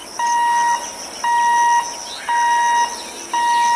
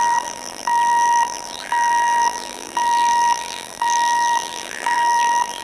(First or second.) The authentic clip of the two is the first